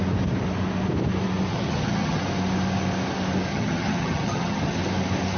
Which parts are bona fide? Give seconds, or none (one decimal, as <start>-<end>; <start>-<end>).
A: 0.0-1.5; 2.2-3.5; 4.8-5.4